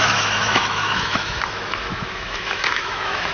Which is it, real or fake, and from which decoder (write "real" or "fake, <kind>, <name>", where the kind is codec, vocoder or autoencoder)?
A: fake, autoencoder, DAC-VAE